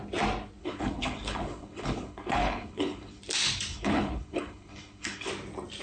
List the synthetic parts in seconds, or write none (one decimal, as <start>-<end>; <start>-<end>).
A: 0.6-3.2; 3.7-5.3